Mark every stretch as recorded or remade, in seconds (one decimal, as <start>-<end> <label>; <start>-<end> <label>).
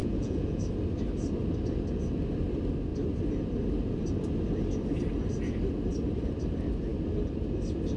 0.0-0.6 remade; 0.6-8.0 recorded